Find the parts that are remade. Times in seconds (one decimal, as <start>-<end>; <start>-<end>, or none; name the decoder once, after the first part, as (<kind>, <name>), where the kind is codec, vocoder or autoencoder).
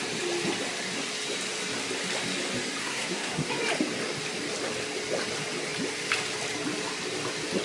2.8-3.5 (codec, SNAC)